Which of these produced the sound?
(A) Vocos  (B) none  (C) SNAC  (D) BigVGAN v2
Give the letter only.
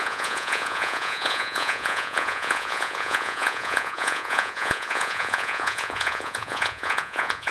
A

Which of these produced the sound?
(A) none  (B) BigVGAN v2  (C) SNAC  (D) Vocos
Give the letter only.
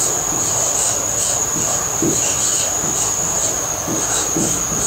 A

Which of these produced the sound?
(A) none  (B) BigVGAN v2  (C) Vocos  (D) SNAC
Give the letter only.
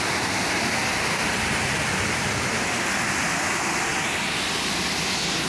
A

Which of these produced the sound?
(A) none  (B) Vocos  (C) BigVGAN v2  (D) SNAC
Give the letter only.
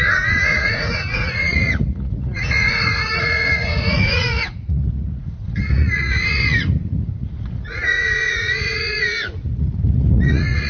B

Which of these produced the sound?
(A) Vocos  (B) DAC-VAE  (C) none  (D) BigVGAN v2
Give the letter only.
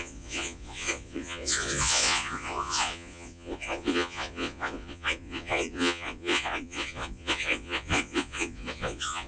A